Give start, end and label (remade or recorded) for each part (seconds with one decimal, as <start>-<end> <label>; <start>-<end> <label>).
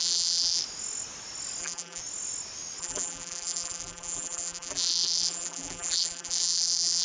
0.0-0.6 remade; 0.6-1.6 recorded; 1.6-2.0 remade; 2.0-2.8 recorded; 2.8-7.0 remade